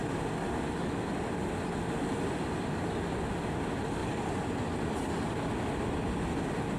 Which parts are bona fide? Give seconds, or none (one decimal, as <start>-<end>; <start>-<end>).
0.0-6.8